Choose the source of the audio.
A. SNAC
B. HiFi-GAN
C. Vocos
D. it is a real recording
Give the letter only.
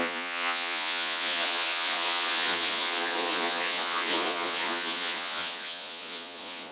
C